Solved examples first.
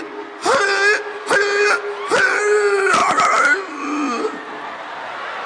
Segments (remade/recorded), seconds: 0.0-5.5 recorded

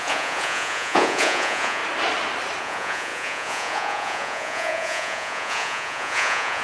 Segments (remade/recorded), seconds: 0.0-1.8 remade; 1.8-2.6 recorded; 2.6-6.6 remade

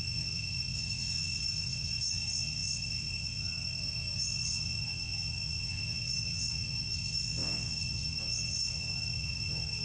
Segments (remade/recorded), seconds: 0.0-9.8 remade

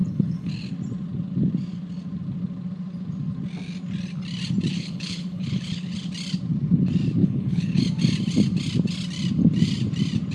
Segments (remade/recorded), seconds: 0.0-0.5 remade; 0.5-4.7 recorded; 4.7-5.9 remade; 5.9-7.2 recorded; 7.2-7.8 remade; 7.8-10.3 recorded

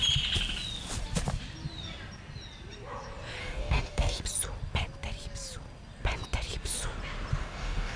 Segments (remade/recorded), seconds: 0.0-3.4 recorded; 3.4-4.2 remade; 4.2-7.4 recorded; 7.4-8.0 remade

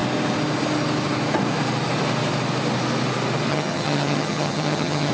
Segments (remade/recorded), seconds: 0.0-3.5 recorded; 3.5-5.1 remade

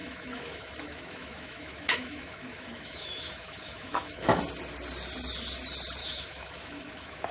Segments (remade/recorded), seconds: 0.0-4.4 remade; 4.4-6.0 recorded; 6.0-7.3 remade